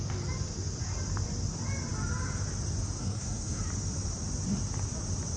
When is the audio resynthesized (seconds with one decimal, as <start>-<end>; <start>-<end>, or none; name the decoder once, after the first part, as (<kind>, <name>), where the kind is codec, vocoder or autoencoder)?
3.0-3.6 (codec, SNAC)